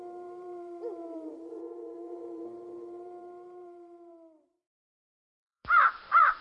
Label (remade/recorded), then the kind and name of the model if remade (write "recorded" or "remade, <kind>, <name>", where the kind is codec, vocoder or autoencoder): remade, vocoder, BigVGAN v2